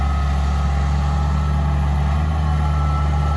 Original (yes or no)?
yes